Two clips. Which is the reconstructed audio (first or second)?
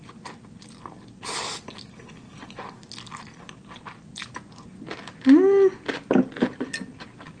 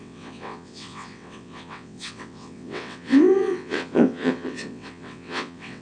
second